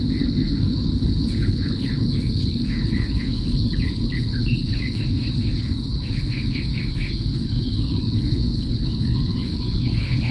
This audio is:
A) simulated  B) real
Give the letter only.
A